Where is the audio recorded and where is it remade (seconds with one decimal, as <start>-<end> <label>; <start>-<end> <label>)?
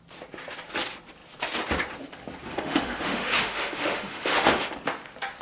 0.0-2.5 recorded; 2.5-4.5 remade; 4.5-5.4 recorded